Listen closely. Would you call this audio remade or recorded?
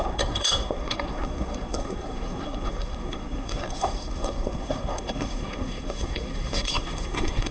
remade